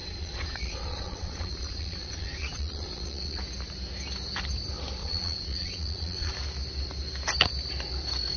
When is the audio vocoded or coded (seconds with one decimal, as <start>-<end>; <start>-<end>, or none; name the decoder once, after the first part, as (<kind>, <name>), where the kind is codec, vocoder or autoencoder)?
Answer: 0.0-3.4 (vocoder, Vocos); 5.0-6.3